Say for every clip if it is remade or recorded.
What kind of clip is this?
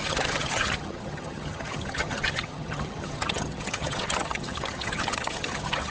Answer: remade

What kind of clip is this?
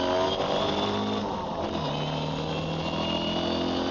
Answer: recorded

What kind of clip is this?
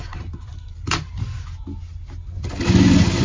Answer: recorded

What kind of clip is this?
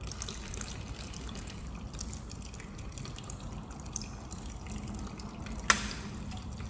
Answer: recorded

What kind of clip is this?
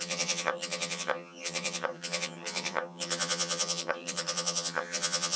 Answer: remade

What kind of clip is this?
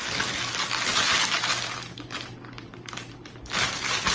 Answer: recorded